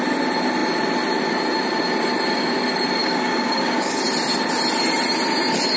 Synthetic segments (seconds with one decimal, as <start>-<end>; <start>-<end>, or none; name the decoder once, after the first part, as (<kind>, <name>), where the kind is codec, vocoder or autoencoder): 3.0-4.0 (codec, DAC)